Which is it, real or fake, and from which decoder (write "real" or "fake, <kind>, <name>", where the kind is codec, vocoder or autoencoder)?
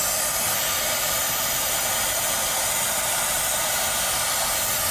real